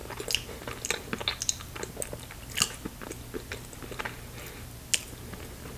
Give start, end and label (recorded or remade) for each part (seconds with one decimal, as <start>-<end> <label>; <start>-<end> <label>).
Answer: 0.0-5.8 recorded